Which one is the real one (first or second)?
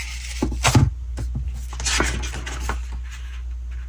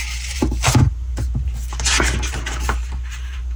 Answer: first